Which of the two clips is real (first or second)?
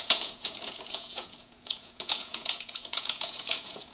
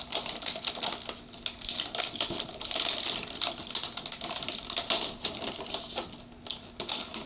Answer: second